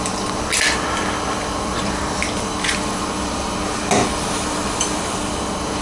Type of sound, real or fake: real